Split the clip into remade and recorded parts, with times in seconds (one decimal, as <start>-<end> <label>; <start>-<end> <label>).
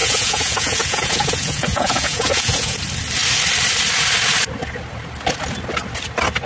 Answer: 0.0-2.8 remade; 2.8-6.5 recorded